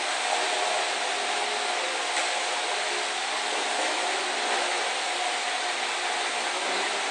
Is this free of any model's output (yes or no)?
yes